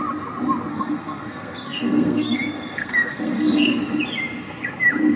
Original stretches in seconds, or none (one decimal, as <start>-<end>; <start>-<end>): 0.0-0.7; 3.8-5.2

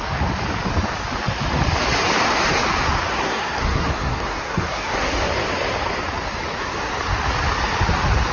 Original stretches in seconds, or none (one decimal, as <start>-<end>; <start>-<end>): 0.0-3.1; 5.3-8.3

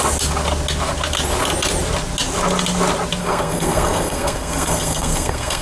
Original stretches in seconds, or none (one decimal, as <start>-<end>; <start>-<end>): 0.0-3.2

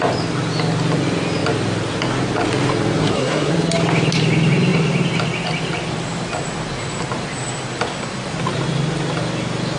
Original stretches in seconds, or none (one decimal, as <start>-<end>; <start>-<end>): 0.0-3.0; 3.5-9.8

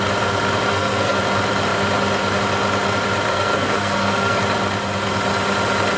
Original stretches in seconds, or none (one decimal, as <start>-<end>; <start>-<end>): 0.0-0.7; 1.2-3.3; 4.4-6.0

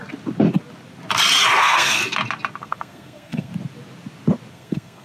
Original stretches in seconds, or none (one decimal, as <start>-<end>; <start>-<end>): 0.0-1.6; 2.0-2.6; 3.5-4.5

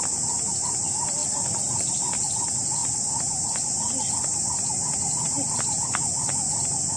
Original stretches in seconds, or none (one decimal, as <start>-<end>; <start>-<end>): 0.0-7.0